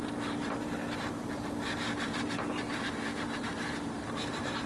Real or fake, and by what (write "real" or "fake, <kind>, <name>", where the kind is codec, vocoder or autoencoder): fake, vocoder, BigVGAN v2